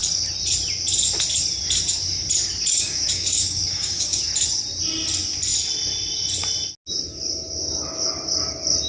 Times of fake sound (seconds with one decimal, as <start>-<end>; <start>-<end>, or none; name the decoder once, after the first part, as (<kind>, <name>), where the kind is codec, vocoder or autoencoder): 2.7-4.2 (codec, DAC)